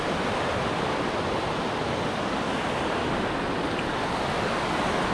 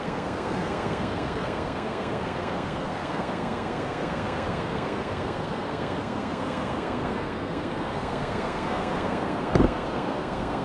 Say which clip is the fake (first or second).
second